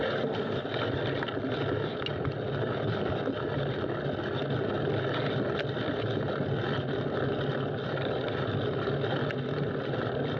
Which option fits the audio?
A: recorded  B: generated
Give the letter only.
A